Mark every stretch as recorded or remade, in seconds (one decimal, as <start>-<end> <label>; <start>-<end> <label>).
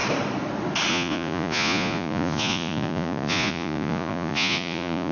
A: 0.0-0.9 recorded; 0.9-5.1 remade